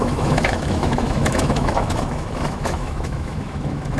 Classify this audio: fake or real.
fake